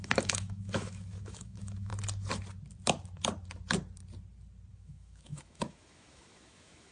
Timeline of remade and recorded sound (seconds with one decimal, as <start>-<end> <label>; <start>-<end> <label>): 0.0-1.9 remade; 1.9-4.7 recorded; 4.7-6.9 remade